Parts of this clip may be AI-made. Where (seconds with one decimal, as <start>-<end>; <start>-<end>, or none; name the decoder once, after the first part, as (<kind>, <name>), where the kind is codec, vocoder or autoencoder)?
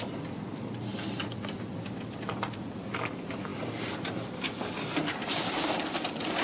none